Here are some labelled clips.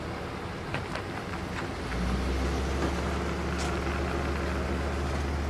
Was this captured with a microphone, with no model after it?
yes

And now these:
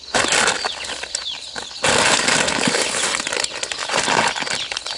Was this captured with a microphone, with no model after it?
no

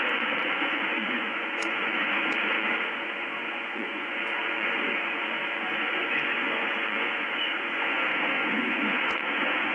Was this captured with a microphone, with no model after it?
no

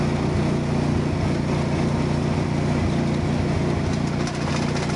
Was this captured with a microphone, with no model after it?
yes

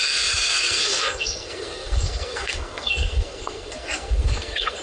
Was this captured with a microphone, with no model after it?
no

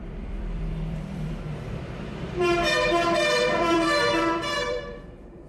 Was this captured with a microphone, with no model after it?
no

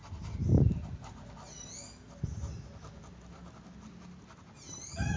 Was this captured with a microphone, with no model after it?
yes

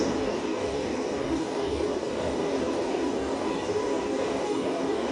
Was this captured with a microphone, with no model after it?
no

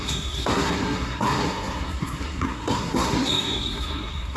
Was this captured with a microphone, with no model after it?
no